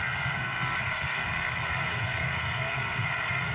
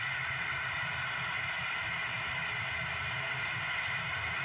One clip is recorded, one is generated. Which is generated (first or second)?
first